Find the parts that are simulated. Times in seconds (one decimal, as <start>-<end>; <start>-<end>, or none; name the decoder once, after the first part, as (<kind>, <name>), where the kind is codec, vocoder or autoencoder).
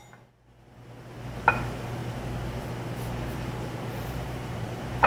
3.3-5.1 (vocoder, BigVGAN v2)